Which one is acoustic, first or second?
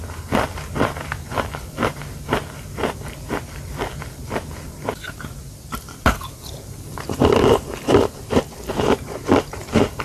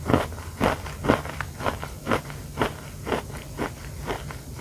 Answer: second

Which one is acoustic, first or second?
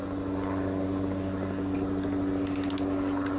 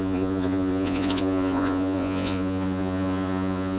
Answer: first